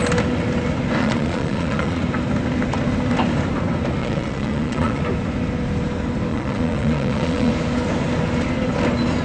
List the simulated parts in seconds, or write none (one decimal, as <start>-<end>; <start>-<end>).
1.0-2.0; 4.0-5.0; 6.3-7.5